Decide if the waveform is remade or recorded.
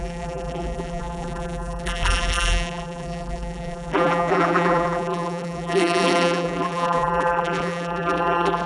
remade